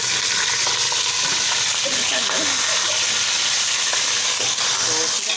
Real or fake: real